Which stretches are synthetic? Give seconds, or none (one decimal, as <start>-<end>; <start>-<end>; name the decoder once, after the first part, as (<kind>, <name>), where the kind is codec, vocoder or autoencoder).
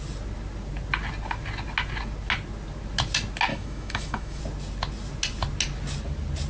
3.5-4.4 (autoencoder, DAC-VAE)